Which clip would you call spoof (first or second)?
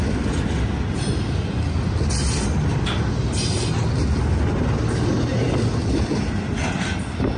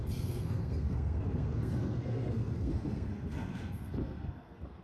second